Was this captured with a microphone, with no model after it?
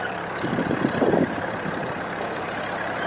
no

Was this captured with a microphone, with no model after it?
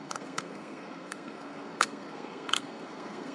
no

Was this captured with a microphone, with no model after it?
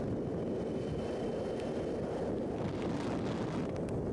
yes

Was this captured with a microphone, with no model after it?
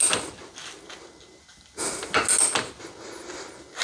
yes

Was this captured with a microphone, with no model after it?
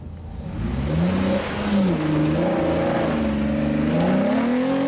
yes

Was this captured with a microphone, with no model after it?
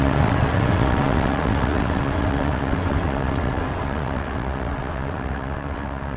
no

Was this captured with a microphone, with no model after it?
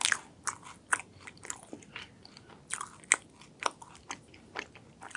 yes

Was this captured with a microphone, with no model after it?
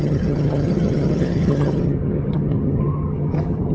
no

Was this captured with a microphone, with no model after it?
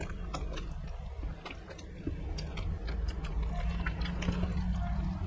yes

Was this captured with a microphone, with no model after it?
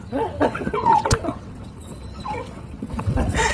no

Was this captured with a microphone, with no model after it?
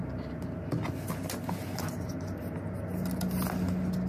yes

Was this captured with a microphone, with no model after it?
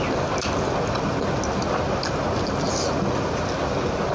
yes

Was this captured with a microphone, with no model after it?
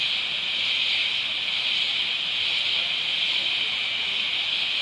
yes